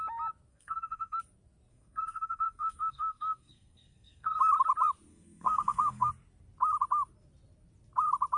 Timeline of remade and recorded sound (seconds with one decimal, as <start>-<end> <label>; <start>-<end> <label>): 0.0-0.5 recorded; 0.5-1.2 remade; 1.2-1.7 recorded; 1.7-4.4 remade; 4.4-5.1 recorded; 5.1-6.1 remade; 6.1-8.4 recorded